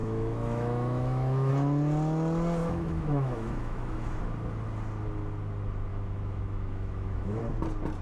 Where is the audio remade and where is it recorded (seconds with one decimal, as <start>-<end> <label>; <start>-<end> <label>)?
0.0-1.5 remade; 1.5-2.6 recorded; 2.6-4.2 remade; 4.2-5.9 recorded; 5.9-7.4 remade; 7.4-8.0 recorded